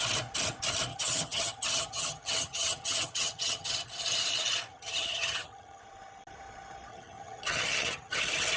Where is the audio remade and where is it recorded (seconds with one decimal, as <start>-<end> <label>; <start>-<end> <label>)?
0.0-0.9 recorded; 0.9-3.7 remade; 3.7-4.7 recorded; 4.7-5.8 remade; 5.8-6.9 recorded; 6.9-8.2 remade; 8.2-8.6 recorded